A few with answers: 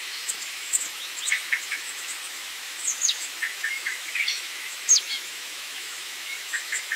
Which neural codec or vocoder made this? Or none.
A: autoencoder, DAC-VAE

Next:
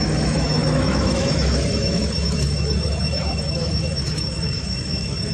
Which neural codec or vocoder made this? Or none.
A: autoencoder, DAC-VAE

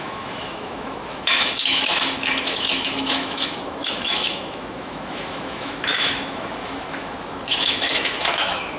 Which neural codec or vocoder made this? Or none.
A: autoencoder, DAC-VAE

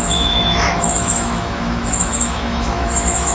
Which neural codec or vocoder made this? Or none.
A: autoencoder, DAC-VAE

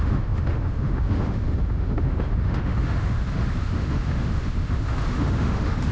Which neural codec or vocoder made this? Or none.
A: autoencoder, DAC-VAE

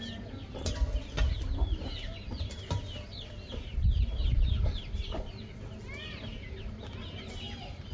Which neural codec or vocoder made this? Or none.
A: none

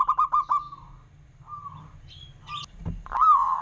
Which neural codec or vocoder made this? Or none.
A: none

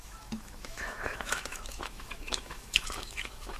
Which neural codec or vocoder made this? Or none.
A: autoencoder, DAC-VAE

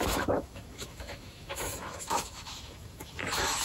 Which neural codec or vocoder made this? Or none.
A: autoencoder, DAC-VAE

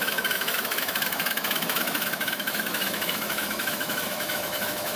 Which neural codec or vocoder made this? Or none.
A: autoencoder, DAC-VAE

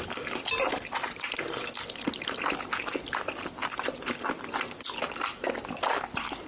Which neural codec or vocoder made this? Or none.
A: none